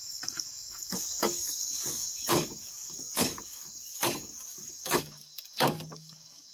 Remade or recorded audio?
remade